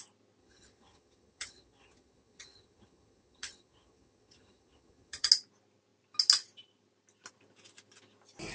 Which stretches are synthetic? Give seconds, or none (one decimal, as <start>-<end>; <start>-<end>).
0.4-5.3

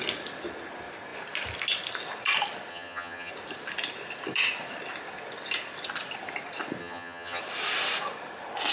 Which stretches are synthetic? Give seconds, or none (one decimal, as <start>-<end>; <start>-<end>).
2.7-3.3; 6.8-7.4